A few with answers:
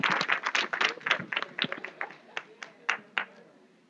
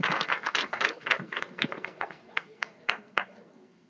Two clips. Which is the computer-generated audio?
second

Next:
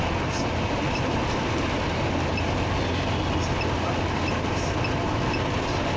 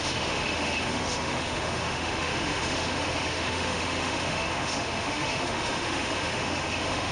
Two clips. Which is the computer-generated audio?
second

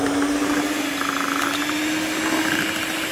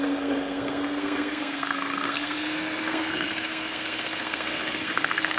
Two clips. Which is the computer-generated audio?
second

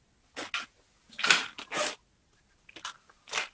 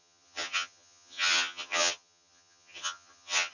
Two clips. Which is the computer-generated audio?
second